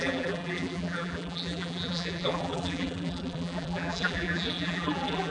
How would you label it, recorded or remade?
remade